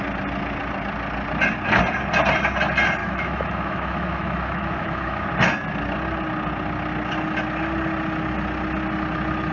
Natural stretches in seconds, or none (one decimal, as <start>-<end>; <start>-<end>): 0.0-3.0; 5.3-9.5